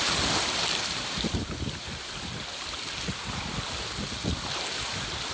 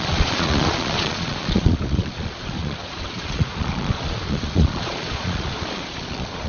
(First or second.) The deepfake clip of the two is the second